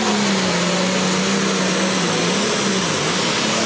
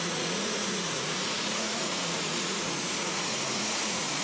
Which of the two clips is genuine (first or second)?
first